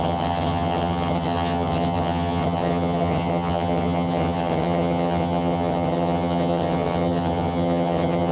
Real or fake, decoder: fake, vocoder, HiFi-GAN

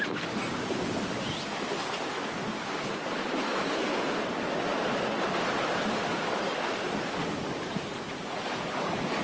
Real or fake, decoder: real